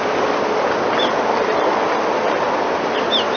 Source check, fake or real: real